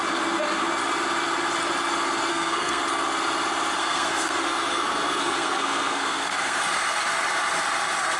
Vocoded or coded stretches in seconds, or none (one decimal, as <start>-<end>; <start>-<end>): 2.3-2.8; 3.8-6.6